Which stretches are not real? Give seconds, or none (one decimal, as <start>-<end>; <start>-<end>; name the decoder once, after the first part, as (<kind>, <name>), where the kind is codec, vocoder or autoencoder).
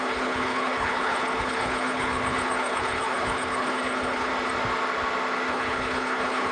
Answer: 0.0-4.3 (codec, HILCodec); 5.5-6.5